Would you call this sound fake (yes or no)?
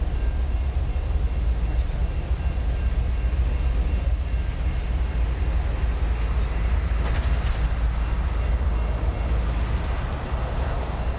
no